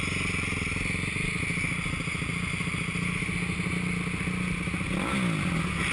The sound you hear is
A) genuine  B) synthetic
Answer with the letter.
A